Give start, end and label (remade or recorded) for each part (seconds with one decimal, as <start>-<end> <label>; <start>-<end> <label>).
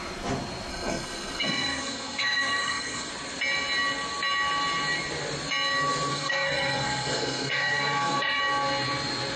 0.0-0.7 recorded; 0.7-3.1 remade; 3.1-6.1 recorded; 6.1-8.4 remade; 8.4-9.4 recorded